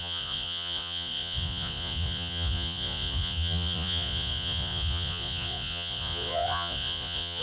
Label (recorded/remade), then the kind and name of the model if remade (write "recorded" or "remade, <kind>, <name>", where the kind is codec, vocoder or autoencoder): remade, vocoder, Vocos